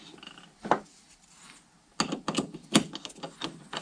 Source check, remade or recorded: recorded